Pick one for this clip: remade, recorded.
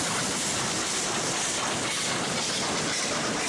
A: recorded